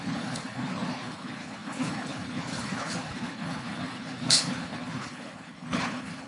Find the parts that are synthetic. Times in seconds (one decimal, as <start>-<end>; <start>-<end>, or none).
0.0-6.3